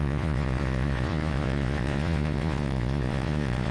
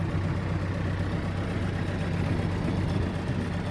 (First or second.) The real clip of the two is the second